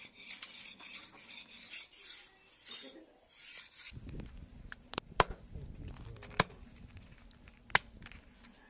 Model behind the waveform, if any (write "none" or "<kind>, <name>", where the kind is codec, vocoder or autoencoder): none